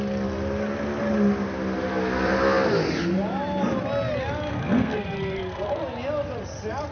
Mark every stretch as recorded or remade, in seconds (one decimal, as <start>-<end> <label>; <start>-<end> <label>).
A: 0.0-4.5 recorded; 4.5-5.8 remade; 5.8-6.9 recorded